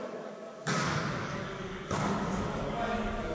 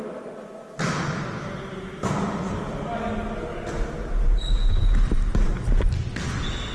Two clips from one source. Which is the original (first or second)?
second